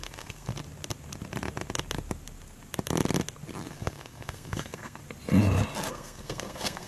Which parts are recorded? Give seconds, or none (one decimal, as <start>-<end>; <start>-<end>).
0.5-3.7; 5.0-5.9